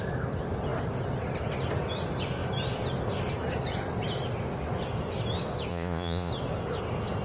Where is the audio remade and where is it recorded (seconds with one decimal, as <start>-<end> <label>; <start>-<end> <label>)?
0.0-5.7 recorded; 5.7-6.3 remade; 6.3-7.2 recorded